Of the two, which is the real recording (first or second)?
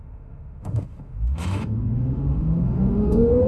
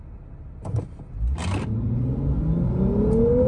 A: second